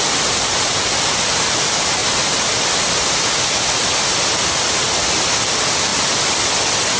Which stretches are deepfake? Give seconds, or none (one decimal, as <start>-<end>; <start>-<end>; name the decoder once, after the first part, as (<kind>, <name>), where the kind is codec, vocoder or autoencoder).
none